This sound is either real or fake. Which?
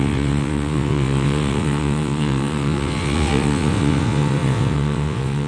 fake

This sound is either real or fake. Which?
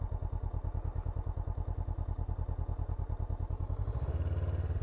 real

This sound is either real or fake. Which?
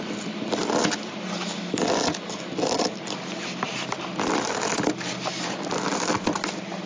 real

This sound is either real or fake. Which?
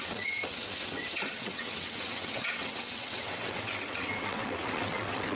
fake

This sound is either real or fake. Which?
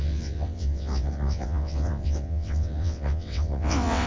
fake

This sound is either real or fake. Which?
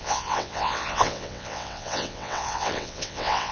fake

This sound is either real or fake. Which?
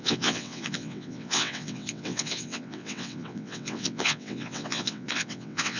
fake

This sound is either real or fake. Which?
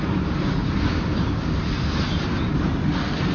real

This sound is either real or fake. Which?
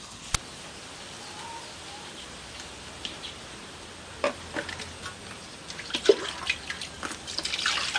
real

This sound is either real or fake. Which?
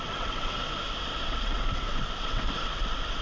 fake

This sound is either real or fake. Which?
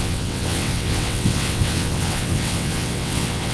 fake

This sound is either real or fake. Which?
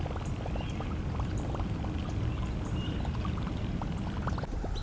real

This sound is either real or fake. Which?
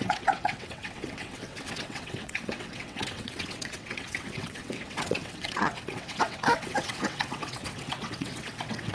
fake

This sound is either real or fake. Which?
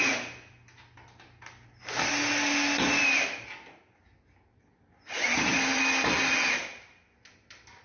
real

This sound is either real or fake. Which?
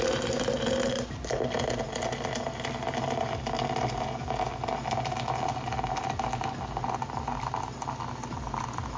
real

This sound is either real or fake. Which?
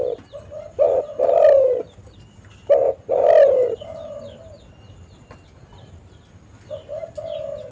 real